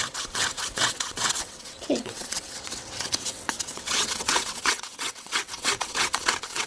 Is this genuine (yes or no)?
no